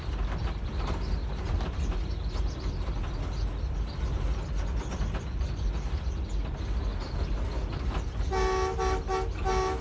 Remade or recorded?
recorded